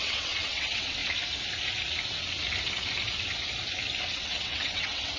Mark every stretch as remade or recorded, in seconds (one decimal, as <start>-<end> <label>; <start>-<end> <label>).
0.0-1.0 remade; 1.0-4.1 recorded; 4.1-5.2 remade